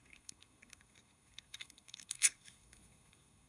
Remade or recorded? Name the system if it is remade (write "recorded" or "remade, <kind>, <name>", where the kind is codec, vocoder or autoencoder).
remade, codec, SNAC